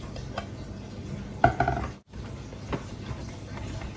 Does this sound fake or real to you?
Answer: real